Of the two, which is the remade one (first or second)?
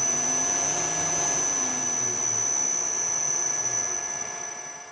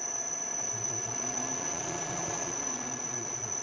second